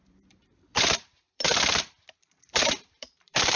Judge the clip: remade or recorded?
remade